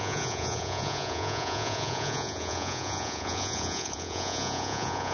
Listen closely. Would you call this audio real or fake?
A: fake